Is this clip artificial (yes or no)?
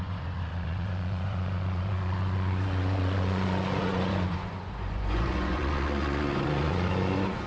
yes